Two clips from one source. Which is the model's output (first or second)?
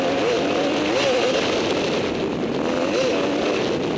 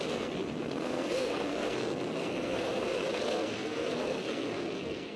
second